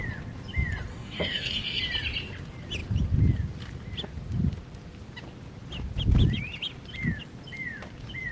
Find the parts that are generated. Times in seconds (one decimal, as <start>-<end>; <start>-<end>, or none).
0.9-1.8